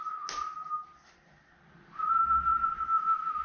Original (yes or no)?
yes